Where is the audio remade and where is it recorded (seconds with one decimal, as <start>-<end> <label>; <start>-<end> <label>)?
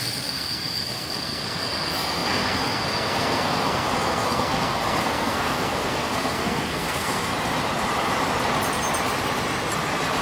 0.0-7.3 remade; 7.3-10.2 recorded